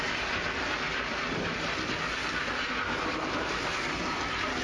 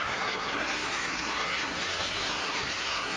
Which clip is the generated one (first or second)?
second